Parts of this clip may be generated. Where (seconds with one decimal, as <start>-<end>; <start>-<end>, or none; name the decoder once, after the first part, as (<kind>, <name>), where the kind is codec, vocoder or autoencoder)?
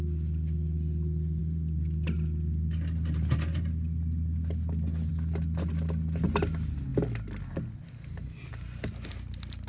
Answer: none